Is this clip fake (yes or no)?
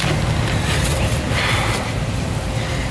no